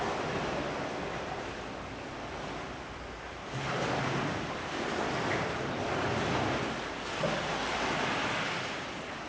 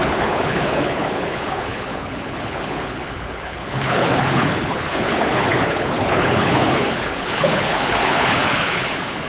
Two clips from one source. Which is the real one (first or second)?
first